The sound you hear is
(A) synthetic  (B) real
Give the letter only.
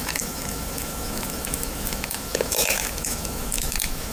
A